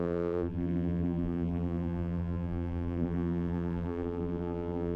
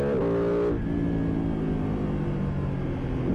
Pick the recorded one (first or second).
second